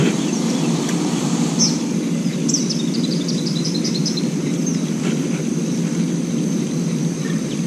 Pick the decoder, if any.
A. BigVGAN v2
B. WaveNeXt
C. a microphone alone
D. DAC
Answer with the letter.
A